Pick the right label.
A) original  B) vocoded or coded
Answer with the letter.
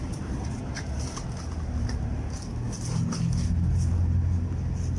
A